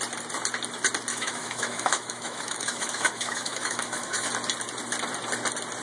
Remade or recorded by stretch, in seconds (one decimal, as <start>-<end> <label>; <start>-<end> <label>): 0.0-1.1 recorded; 1.1-4.3 remade; 4.3-5.8 recorded